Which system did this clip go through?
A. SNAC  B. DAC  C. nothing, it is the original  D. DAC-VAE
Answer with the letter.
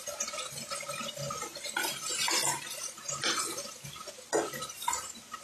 C